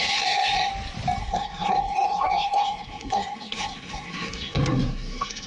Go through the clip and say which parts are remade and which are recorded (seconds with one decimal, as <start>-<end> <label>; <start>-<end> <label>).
0.0-0.7 remade; 0.7-1.2 recorded; 1.2-5.5 remade